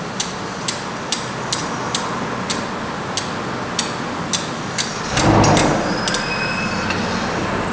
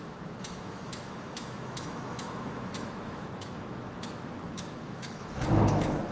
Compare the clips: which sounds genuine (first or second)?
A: first